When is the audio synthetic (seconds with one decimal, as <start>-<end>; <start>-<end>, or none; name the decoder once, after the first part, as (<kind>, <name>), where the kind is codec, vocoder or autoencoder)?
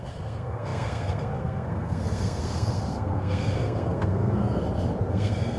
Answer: 0.0-4.6 (codec, SNAC); 5.1-5.6